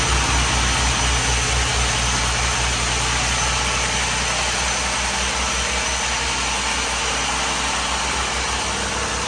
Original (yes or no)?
yes